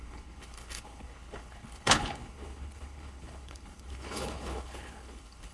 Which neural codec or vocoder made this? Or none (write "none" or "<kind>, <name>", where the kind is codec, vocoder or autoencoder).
codec, HILCodec